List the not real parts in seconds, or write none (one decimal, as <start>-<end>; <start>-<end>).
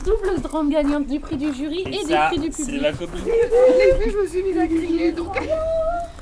0.0-0.7; 2.7-5.2